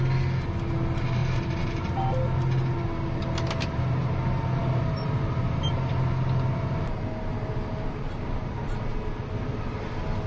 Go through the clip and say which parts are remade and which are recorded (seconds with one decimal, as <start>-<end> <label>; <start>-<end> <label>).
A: 0.0-1.2 recorded; 1.2-1.9 remade; 1.9-10.3 recorded

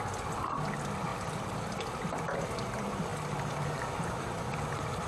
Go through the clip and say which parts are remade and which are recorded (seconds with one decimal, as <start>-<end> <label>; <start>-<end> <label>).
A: 0.0-1.1 recorded; 1.1-2.6 remade; 2.6-3.1 recorded; 3.1-5.1 remade

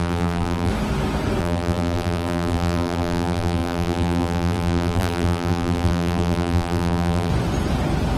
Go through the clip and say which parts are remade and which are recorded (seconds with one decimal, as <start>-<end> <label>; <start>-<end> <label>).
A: 0.0-0.7 remade; 0.7-1.4 recorded; 1.4-7.3 remade; 7.3-8.2 recorded

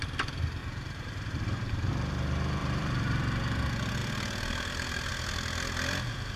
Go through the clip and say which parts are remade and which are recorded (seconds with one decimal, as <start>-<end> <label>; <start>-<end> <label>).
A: 0.0-0.6 recorded; 0.6-1.9 remade; 1.9-2.6 recorded; 2.6-3.2 remade; 3.2-6.4 recorded

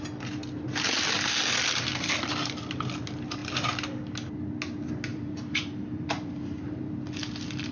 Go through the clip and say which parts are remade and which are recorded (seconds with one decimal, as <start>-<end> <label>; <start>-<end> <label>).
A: 0.0-5.1 recorded; 5.1-6.9 remade; 6.9-7.7 recorded

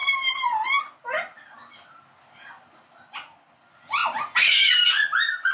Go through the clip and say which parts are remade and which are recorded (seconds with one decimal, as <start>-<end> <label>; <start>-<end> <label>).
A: 0.0-4.0 recorded; 4.0-4.7 remade; 4.7-5.5 recorded

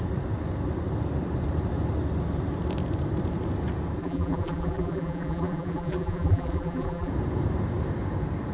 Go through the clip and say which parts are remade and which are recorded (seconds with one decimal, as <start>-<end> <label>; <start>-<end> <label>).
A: 0.0-4.0 recorded; 4.0-7.1 remade; 7.1-8.5 recorded